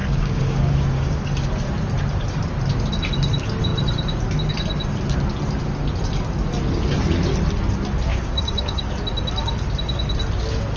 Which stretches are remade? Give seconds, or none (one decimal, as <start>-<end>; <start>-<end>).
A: 0.0-1.2; 8.1-8.9